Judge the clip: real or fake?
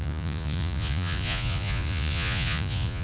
fake